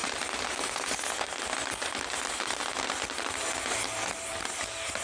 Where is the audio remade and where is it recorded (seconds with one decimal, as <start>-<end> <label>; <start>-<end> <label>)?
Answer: 0.0-5.0 recorded